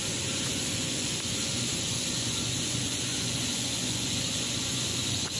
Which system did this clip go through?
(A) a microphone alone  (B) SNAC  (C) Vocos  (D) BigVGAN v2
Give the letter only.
C